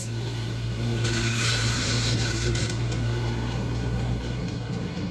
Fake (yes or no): yes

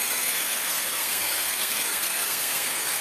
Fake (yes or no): yes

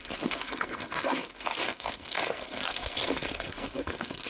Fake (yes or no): yes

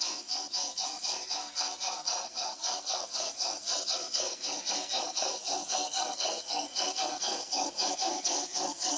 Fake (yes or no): yes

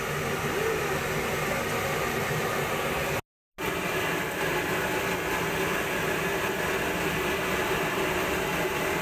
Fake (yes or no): no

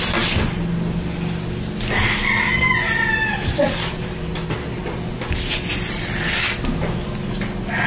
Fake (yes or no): no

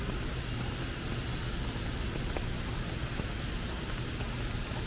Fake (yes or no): no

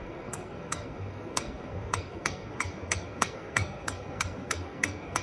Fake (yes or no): yes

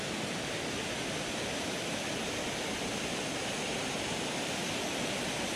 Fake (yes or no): no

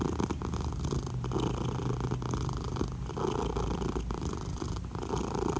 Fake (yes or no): no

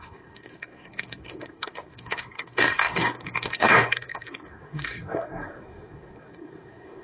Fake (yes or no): yes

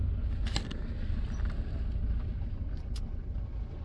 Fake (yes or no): no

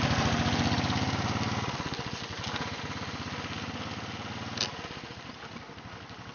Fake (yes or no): no